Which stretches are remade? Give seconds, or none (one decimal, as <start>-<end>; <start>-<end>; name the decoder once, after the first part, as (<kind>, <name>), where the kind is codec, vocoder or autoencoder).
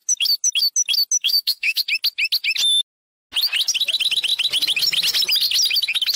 1.2-1.8 (autoencoder, DAC-VAE)